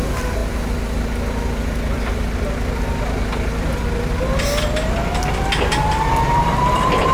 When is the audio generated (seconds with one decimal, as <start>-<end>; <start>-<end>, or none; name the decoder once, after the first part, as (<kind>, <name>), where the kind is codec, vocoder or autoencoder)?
none